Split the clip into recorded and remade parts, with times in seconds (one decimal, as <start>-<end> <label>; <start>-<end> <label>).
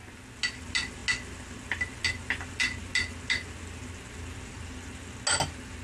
0.0-5.8 recorded